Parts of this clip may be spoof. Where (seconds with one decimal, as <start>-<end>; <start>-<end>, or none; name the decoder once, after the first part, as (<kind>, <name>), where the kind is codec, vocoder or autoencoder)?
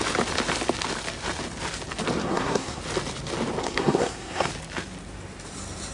2.2-2.8 (codec, SNAC); 3.6-4.5